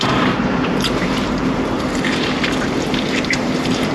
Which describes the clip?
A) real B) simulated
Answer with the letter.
B